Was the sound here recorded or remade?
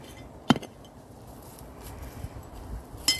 recorded